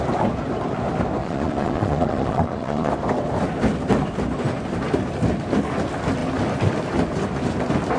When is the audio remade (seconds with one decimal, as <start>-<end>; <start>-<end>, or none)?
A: 1.2-2.9